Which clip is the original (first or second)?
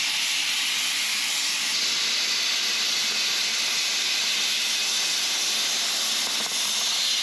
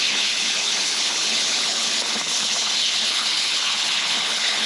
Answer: first